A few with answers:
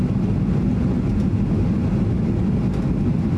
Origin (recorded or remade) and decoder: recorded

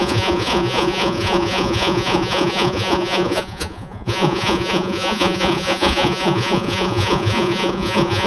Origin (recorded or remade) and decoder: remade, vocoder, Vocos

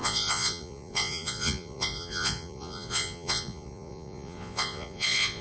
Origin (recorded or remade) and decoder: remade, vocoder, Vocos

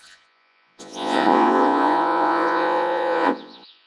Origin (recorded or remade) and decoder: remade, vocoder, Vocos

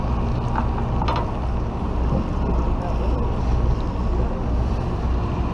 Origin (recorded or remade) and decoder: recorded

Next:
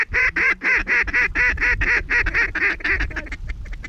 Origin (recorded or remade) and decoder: recorded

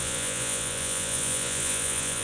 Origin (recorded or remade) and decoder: remade, vocoder, Vocos